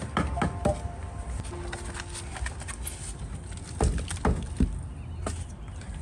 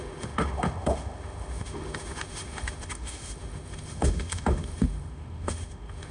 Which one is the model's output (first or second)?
second